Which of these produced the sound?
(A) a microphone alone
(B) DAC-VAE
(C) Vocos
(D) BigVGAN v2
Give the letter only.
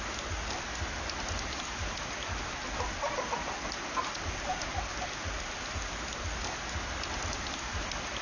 A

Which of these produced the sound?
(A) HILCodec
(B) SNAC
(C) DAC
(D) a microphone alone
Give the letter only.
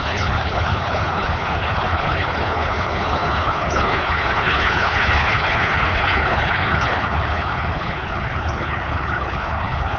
A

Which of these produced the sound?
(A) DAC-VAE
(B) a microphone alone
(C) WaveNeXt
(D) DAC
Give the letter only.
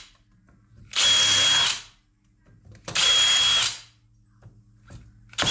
B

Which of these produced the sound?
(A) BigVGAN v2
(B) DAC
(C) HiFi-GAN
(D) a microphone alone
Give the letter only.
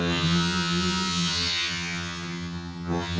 C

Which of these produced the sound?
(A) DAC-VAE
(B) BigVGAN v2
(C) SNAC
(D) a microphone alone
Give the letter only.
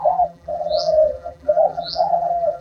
B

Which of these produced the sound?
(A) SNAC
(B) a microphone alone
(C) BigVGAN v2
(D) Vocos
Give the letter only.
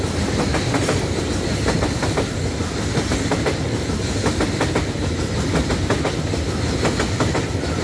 B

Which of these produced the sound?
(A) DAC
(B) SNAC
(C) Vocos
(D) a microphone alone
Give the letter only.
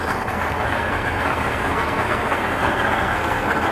B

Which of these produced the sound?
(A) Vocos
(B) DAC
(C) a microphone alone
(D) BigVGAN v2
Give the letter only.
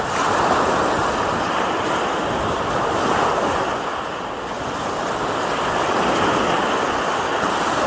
C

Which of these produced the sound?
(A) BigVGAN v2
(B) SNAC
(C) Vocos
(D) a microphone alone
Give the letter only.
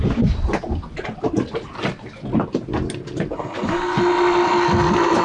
D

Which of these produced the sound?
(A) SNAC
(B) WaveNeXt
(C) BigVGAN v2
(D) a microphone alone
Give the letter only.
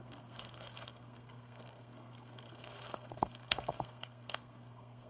A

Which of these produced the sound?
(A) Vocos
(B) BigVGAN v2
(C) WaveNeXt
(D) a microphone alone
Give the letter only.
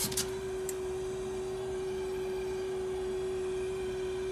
D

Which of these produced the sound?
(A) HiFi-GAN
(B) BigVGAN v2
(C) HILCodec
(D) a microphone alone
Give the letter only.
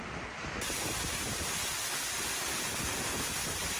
D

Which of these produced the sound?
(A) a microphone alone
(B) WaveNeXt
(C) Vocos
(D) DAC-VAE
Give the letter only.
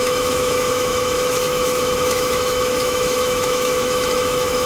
D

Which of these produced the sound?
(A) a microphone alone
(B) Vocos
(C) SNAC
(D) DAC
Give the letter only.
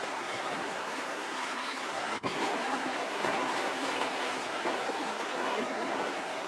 C